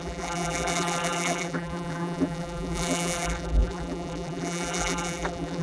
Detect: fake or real fake